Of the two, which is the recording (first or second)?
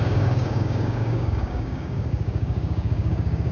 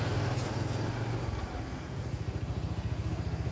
second